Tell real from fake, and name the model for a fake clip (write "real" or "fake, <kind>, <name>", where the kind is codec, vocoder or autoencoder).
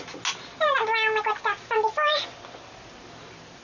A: real